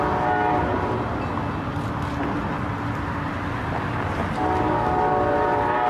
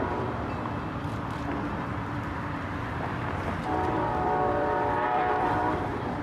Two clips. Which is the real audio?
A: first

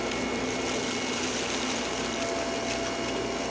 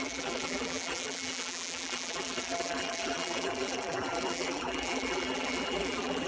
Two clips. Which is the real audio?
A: first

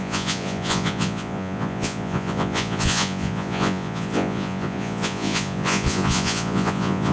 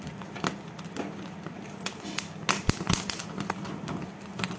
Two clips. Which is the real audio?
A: second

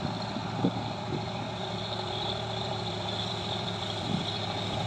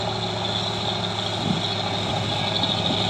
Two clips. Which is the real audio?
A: second